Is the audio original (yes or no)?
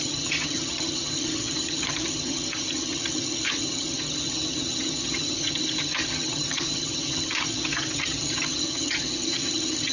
no